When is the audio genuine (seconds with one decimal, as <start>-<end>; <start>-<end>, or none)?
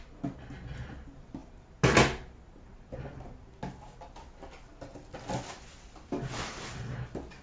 0.0-7.4